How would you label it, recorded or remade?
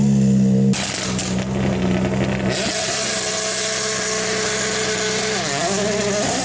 recorded